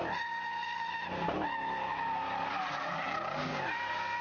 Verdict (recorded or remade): recorded